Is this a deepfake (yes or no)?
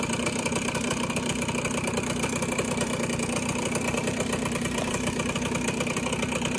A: no